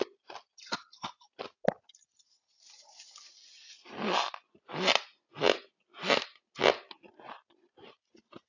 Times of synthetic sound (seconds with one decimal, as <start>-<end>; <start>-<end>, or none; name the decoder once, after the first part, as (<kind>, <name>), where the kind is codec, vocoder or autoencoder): none